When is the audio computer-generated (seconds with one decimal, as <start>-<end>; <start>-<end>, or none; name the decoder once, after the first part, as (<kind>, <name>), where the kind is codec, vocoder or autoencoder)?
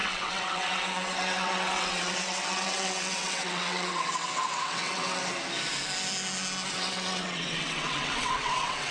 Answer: 0.0-5.2 (vocoder, WaveNeXt); 6.7-8.9